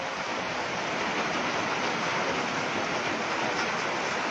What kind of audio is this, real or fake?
real